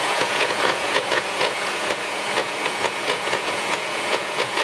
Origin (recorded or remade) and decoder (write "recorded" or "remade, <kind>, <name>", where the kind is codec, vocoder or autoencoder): remade, vocoder, Vocos